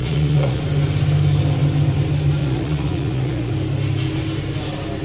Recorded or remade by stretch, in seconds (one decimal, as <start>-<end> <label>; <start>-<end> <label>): 0.0-0.6 remade; 0.6-2.4 recorded; 2.4-3.5 remade; 3.5-5.0 recorded